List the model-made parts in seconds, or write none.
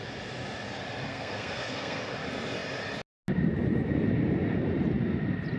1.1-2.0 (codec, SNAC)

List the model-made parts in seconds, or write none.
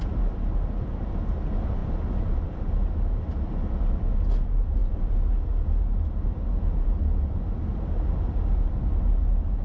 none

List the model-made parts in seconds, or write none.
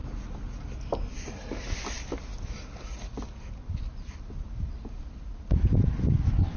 none